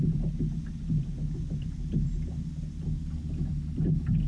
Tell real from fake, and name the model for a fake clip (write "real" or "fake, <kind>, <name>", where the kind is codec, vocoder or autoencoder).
real